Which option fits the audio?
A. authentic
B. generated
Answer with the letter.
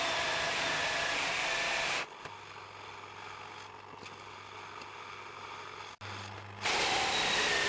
A